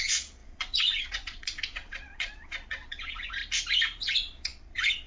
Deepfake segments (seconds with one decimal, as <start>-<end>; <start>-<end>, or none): 0.0-3.4; 4.0-5.1